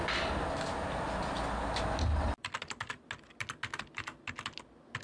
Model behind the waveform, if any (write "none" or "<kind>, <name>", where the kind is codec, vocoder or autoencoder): none